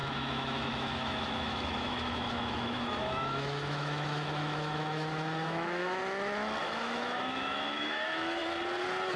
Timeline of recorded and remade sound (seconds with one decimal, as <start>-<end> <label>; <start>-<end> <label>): 0.0-6.0 remade; 6.0-6.6 recorded; 6.6-8.4 remade; 8.4-9.2 recorded